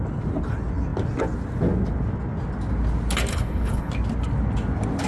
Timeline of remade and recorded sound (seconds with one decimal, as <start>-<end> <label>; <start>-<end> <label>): 0.0-3.3 recorded; 3.3-3.9 remade; 3.9-5.1 recorded